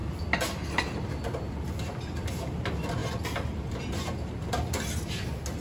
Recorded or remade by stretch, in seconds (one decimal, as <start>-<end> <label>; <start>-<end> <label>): 0.0-5.6 recorded